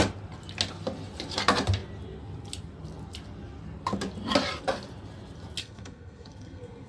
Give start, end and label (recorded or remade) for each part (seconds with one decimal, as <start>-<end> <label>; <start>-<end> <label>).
0.0-5.6 recorded; 5.6-6.9 remade